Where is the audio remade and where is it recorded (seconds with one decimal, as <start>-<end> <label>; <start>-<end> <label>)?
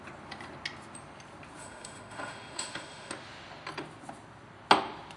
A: 0.0-1.6 recorded; 1.6-3.1 remade; 3.1-5.2 recorded